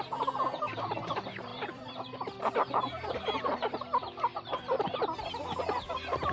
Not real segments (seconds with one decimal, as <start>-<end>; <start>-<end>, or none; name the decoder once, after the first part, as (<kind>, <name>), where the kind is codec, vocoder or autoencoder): 1.5-5.0 (vocoder, BigVGAN v2)